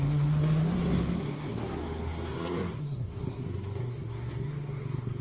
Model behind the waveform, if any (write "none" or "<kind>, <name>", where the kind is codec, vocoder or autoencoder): codec, SNAC